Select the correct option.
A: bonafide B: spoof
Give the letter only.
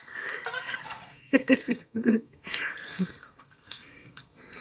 B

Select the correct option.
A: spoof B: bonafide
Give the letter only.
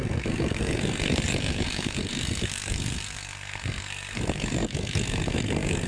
A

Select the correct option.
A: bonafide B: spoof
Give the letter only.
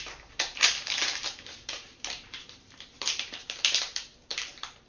B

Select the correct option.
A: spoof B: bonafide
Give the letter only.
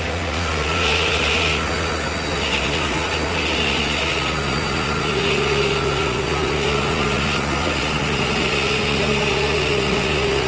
A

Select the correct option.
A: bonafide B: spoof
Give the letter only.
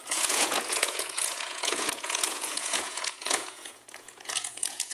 B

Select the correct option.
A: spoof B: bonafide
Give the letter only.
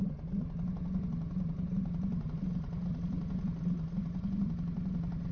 B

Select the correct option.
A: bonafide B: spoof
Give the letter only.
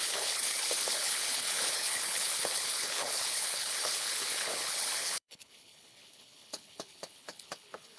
B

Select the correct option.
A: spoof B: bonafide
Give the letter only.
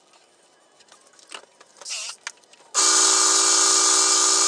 B